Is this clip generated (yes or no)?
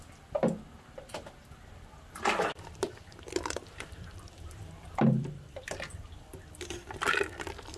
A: yes